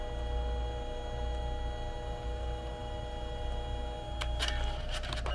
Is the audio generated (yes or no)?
no